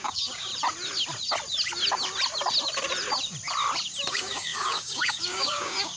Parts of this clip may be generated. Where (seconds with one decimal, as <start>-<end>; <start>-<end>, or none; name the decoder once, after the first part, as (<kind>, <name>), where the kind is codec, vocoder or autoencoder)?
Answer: 0.0-0.5 (codec, DAC); 4.1-6.0